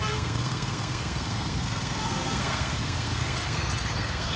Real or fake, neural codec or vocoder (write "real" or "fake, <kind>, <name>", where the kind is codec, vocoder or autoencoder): fake, codec, SNAC